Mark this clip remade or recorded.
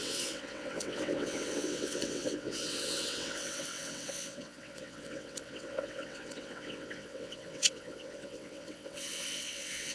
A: remade